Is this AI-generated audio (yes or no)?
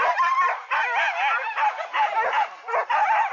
no